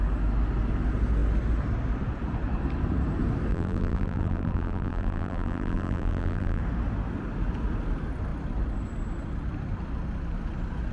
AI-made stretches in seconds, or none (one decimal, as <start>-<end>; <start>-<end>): 3.5-6.6